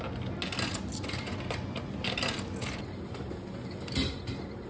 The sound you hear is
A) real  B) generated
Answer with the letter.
A